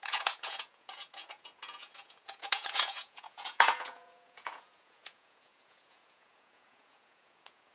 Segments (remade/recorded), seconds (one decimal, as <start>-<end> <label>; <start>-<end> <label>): 0.0-7.7 remade

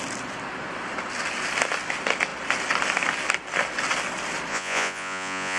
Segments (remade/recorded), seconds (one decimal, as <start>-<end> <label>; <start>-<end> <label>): 0.0-4.5 recorded; 4.5-5.6 remade

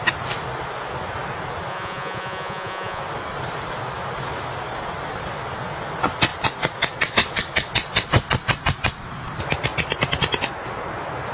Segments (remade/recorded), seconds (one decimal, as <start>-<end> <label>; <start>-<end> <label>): 0.0-1.7 recorded; 1.7-3.0 remade; 3.0-11.3 recorded

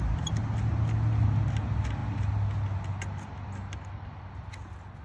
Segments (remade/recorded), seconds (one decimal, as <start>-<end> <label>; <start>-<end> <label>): 0.0-5.0 recorded

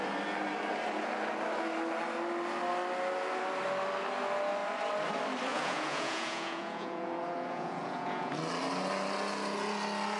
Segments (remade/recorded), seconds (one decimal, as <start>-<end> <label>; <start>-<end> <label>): 0.0-5.5 recorded; 5.5-8.3 remade; 8.3-10.2 recorded